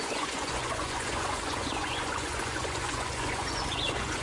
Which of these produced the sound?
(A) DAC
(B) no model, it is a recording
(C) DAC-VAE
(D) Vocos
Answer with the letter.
D